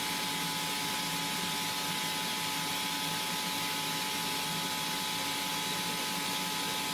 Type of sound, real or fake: real